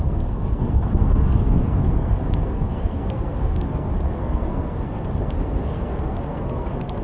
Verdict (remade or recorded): remade